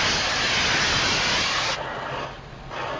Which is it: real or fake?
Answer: real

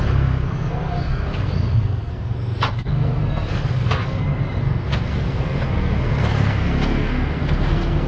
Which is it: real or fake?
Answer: fake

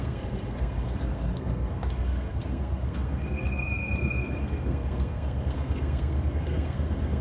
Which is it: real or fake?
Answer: fake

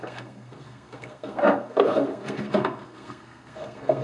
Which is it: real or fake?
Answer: fake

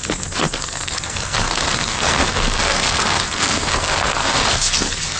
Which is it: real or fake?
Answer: fake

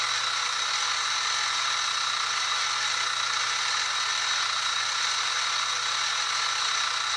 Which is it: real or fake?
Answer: real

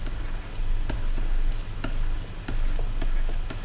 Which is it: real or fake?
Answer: real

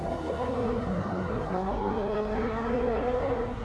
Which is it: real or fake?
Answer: fake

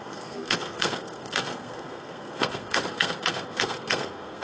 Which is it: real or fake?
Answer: fake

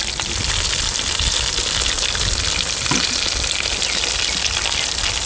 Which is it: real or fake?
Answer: real